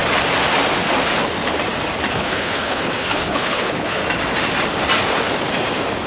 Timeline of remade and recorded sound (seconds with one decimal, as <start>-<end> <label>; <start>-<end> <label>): 0.0-2.1 recorded; 2.1-4.0 remade; 4.0-6.1 recorded